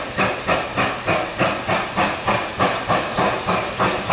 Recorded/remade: recorded